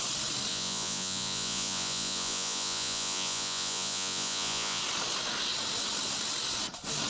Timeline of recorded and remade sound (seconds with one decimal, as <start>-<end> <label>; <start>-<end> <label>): 0.0-0.5 recorded; 0.5-4.8 remade; 4.8-7.1 recorded